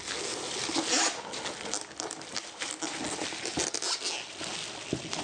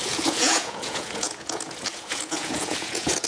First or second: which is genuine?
first